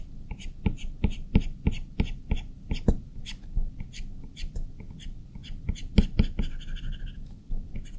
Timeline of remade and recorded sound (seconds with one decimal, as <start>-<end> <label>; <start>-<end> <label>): 0.0-8.0 recorded